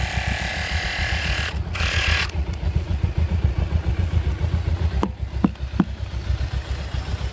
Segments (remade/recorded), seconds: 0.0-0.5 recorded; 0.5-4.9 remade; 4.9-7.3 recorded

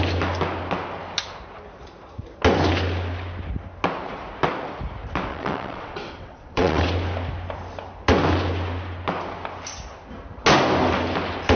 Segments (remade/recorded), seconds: 0.0-5.3 recorded; 5.3-6.9 remade; 6.9-11.6 recorded

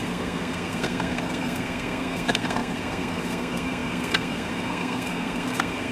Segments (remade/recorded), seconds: 0.0-5.9 remade

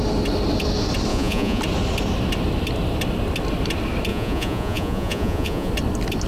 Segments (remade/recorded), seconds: 0.0-1.1 recorded; 1.1-1.6 remade; 1.6-4.1 recorded; 4.1-5.7 remade; 5.7-6.3 recorded